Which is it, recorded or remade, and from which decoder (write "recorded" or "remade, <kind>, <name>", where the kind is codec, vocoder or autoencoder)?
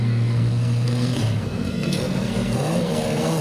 remade, codec, SNAC